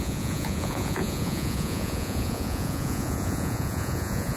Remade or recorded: remade